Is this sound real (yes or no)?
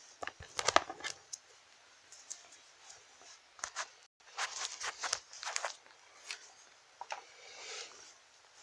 yes